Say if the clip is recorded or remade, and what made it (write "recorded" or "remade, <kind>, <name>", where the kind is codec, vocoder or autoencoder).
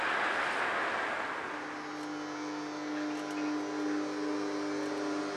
recorded